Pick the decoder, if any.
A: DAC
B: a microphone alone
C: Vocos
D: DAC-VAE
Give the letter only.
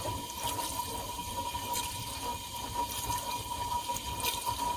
B